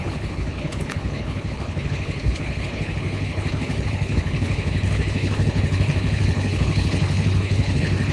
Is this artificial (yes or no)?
yes